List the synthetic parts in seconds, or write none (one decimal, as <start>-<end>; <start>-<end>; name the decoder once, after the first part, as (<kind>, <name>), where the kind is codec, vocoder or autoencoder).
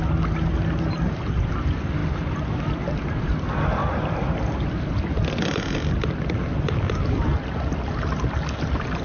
none